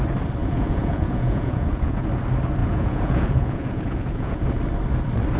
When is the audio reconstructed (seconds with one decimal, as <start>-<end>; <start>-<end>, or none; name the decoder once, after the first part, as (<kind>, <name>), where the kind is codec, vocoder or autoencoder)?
0.4-2.1 (vocoder, Vocos); 2.6-4.6